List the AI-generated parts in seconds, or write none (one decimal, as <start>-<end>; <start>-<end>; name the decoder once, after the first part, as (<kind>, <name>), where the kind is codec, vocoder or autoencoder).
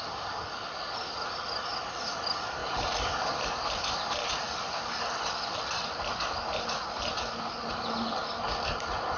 none